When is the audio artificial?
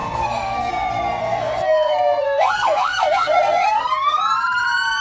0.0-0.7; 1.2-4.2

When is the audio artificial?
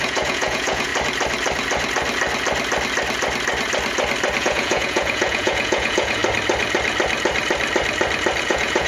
0.0-0.9; 4.4-6.2; 8.4-8.9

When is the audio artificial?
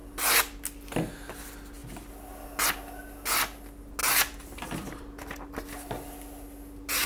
none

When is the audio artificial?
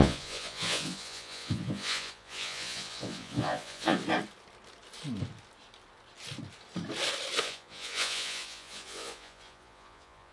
0.0-4.0; 7.4-10.3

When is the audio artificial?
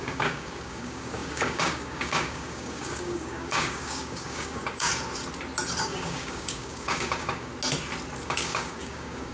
0.0-4.9; 5.8-7.5; 8.2-9.3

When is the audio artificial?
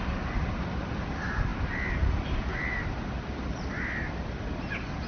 none